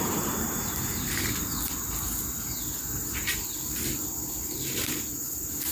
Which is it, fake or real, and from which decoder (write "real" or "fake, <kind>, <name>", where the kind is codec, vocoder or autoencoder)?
fake, vocoder, BigVGAN v2